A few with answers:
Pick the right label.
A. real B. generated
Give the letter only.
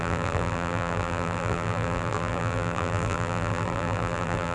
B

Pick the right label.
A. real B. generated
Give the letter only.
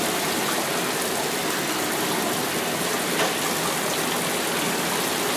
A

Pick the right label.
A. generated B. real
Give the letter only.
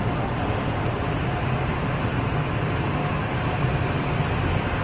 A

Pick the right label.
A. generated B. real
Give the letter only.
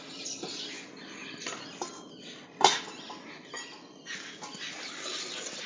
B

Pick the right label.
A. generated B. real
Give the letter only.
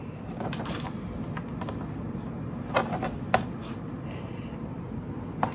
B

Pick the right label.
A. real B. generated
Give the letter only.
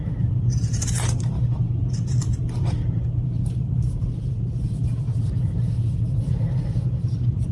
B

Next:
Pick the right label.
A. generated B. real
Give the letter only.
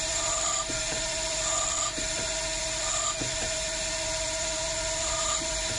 A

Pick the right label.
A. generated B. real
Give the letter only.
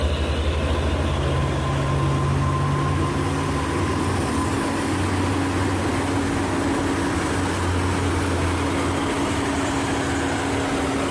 B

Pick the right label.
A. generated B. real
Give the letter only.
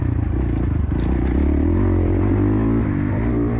B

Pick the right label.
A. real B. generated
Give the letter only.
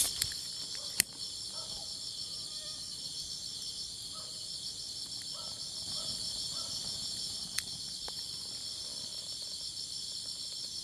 A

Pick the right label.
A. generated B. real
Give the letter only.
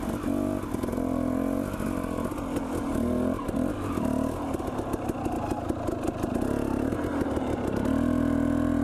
B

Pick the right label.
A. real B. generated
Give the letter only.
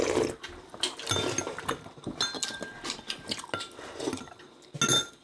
A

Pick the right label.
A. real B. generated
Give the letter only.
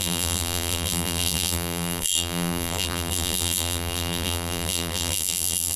B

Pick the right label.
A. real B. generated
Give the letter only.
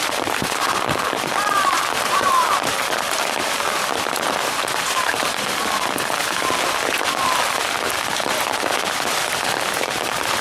B